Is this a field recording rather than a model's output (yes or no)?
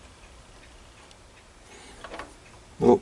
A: yes